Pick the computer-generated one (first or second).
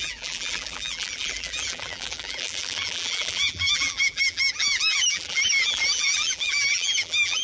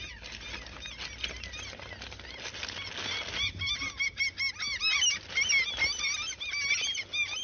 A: first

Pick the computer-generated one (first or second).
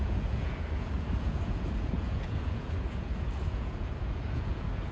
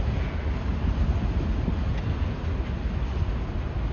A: first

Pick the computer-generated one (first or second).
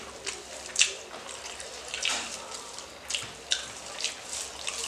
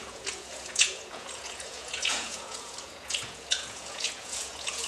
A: second